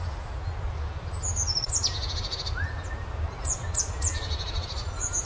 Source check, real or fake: real